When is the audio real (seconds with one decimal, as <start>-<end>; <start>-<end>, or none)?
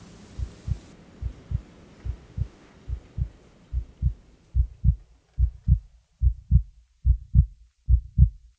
0.0-2.2; 2.7-8.6